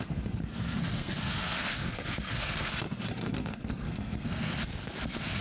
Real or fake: fake